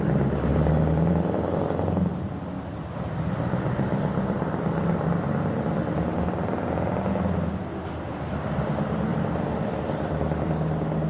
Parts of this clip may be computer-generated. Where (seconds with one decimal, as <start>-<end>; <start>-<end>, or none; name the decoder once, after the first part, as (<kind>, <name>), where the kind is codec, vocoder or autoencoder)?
0.5-1.1 (vocoder, BigVGAN v2); 2.1-5.6; 9.1-10.5